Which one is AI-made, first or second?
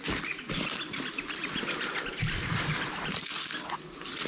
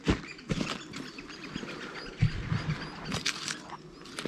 first